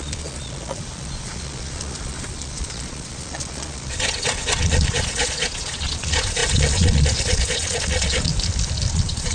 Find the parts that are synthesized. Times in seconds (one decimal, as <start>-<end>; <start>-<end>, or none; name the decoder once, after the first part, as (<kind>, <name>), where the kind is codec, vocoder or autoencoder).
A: 0.0-8.3 (vocoder, Vocos); 8.9-9.3